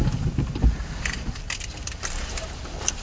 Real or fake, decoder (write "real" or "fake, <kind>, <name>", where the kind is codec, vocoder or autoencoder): real